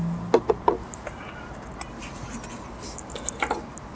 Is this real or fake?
real